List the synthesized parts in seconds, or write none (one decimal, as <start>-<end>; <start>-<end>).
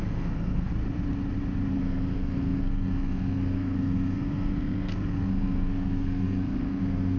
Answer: 0.0-0.7; 1.7-7.2